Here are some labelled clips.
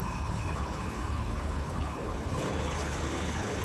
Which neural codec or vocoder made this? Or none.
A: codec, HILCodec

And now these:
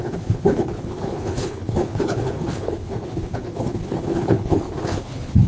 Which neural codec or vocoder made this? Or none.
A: codec, HILCodec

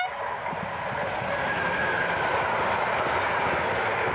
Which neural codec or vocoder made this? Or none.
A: none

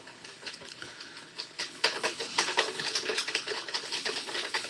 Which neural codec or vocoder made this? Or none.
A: codec, HILCodec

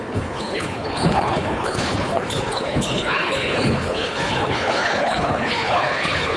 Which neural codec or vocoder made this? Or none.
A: codec, HILCodec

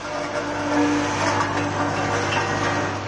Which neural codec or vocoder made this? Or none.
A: none